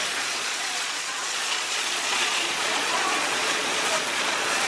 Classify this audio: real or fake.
fake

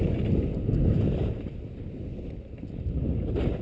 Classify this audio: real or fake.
real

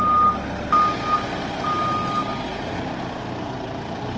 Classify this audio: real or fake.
real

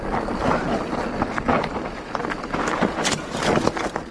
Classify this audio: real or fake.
real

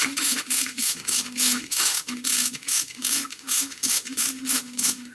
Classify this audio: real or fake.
fake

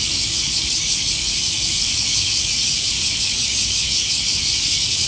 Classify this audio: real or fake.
fake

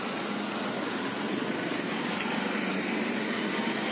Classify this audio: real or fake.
real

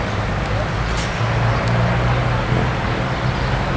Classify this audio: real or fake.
real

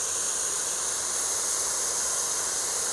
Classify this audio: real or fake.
real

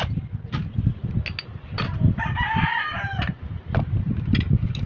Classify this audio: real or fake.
real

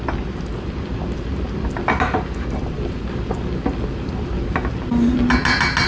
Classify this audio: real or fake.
real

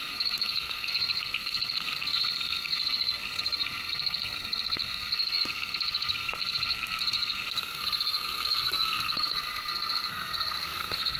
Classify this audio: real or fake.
fake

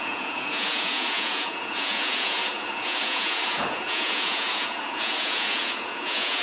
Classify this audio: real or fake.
fake